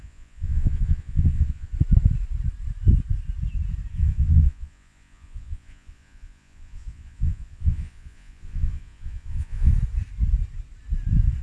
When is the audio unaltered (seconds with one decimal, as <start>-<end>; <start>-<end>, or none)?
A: 1.7-3.9; 9.7-11.4